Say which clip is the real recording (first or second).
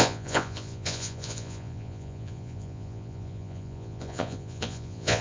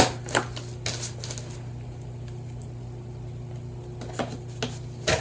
second